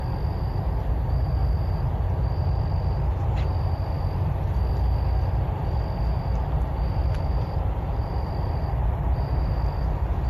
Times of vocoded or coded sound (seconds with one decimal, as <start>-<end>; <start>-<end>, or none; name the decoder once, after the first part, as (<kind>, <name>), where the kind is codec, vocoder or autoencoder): 7.0-8.7 (vocoder, BigVGAN v2)